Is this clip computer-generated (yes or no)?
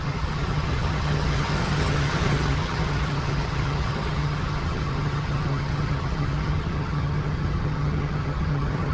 yes